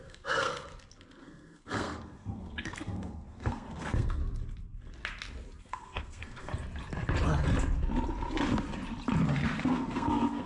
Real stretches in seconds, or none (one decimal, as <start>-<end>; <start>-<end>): 0.5-1.2; 4.2-5.6; 6.5-9.6